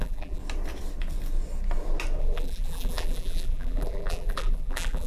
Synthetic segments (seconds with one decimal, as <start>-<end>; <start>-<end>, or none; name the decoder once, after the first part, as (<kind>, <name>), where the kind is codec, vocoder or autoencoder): 0.0-0.4 (vocoder, BigVGAN v2); 2.2-5.1

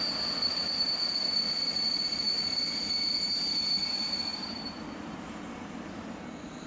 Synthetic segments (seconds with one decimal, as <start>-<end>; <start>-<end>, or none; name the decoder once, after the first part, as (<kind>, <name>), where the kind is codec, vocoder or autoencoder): 0.4-2.6 (vocoder, BigVGAN v2); 4.3-6.1

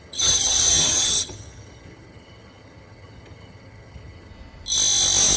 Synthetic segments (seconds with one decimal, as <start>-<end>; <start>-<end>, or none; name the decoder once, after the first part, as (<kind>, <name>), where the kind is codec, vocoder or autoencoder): 0.0-4.3 (vocoder, HiFi-GAN)

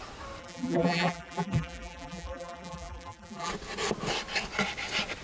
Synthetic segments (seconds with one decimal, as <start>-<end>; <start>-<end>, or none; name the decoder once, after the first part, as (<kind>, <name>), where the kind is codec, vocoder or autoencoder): 0.4-3.5 (vocoder, BigVGAN v2)

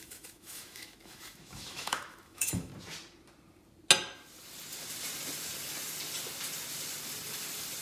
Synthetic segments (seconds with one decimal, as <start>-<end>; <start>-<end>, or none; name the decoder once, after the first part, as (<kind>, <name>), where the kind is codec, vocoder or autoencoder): 0.0-2.7 (autoencoder, DAC-VAE)

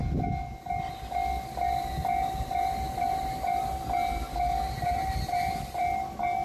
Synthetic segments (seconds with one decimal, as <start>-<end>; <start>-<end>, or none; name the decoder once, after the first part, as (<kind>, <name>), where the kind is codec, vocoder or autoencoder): none

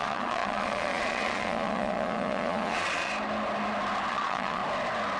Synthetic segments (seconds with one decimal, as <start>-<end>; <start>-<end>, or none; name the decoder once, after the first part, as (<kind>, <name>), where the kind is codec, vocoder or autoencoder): 0.0-3.1 (vocoder, Vocos); 4.1-4.6

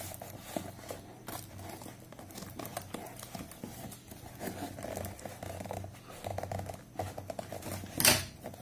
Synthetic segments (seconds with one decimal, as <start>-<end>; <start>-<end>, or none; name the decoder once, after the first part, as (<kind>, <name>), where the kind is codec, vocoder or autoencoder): none